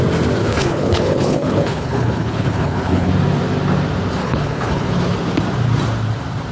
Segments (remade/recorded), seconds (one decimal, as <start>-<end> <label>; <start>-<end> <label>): 0.0-0.4 recorded; 0.4-3.1 remade; 3.1-4.2 recorded; 4.2-5.0 remade; 5.0-6.5 recorded